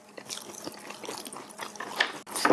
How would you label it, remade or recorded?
recorded